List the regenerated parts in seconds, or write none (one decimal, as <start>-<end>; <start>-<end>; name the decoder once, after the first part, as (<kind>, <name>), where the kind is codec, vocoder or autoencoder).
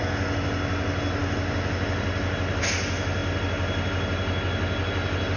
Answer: none